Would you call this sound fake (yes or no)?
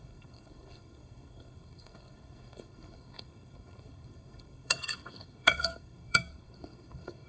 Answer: yes